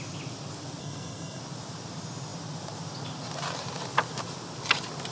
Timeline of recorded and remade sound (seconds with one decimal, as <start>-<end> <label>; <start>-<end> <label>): 0.0-0.8 recorded; 0.8-1.4 remade; 1.4-5.1 recorded